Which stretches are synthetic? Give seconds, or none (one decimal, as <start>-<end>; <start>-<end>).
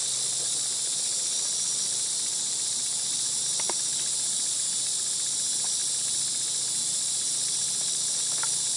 none